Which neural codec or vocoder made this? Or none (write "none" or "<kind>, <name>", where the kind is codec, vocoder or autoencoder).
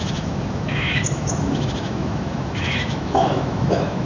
autoencoder, DAC-VAE